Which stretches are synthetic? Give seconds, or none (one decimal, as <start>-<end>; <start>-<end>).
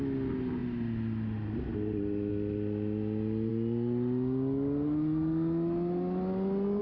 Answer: none